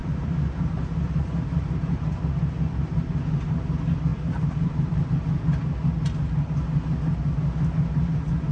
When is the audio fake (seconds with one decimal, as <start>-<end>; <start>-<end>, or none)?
0.0-2.2; 4.1-5.1